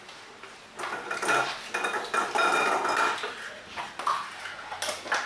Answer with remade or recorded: recorded